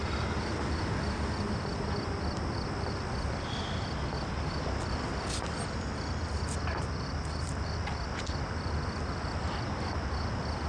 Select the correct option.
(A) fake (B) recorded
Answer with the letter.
B